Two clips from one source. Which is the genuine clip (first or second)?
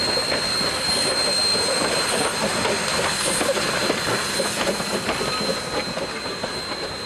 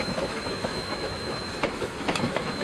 first